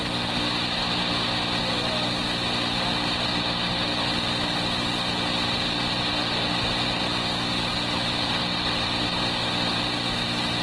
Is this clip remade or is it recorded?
recorded